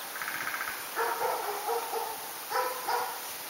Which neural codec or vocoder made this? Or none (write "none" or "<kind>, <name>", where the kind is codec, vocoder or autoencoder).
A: none